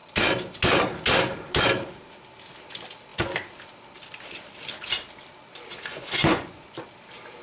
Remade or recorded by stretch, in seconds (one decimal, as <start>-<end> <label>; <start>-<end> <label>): 0.0-5.9 recorded; 5.9-6.7 remade; 6.7-7.4 recorded